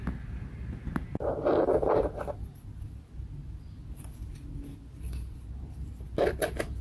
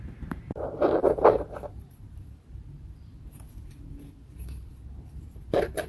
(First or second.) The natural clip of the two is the first